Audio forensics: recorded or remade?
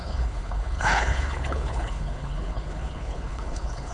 remade